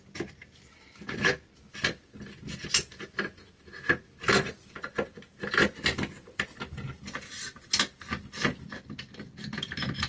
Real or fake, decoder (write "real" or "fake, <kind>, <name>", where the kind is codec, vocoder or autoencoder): real